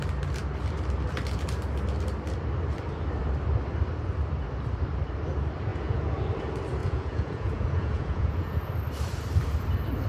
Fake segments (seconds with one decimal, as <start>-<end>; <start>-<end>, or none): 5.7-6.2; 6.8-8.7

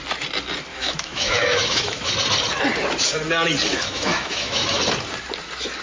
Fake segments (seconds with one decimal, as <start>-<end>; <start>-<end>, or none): 0.7-2.1; 3.7-4.8

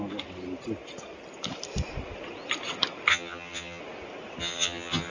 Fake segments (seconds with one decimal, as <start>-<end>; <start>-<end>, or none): 3.1-3.8; 4.4-5.1